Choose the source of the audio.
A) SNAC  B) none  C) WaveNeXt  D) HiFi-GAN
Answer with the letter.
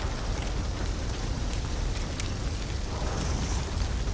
B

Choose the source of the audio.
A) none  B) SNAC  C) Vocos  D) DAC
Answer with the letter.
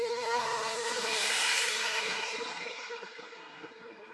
B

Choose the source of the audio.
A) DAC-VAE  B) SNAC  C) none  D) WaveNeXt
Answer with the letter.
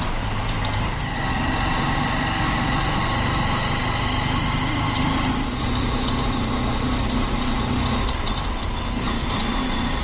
C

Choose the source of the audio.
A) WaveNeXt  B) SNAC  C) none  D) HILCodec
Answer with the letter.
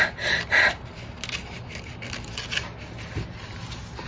C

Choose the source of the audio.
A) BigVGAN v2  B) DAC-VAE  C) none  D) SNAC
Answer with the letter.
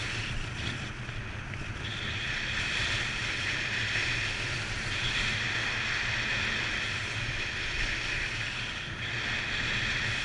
C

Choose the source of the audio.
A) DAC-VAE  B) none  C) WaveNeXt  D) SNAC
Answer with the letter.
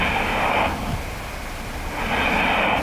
B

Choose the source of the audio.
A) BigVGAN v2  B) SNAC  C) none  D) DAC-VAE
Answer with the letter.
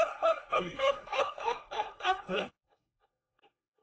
B